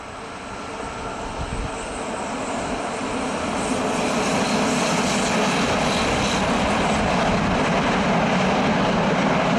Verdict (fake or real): real